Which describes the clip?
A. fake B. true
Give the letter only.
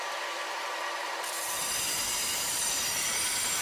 A